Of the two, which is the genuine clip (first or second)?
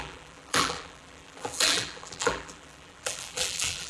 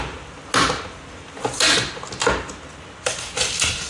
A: second